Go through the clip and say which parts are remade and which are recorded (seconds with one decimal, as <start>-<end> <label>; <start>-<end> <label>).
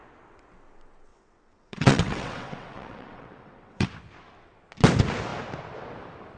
0.0-1.1 recorded; 1.1-3.9 remade; 3.9-6.4 recorded